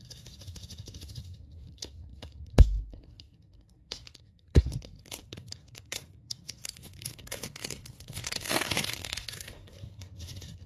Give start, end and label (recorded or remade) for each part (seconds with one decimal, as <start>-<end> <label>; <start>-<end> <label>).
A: 0.0-10.7 remade